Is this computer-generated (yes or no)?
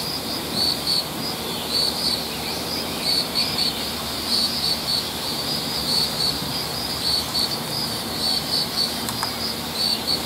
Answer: yes